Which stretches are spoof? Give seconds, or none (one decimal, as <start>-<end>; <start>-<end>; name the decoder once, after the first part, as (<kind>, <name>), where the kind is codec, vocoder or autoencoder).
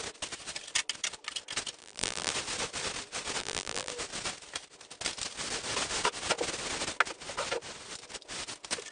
1.8-2.3 (vocoder, BigVGAN v2); 3.4-3.9